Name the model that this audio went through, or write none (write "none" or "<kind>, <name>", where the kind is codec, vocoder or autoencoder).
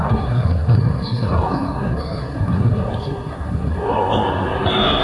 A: codec, SNAC